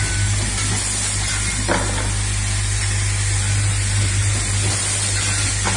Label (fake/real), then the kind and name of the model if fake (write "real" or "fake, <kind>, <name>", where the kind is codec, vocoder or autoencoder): real